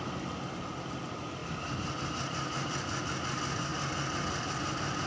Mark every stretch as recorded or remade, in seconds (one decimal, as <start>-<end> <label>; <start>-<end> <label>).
0.0-5.1 recorded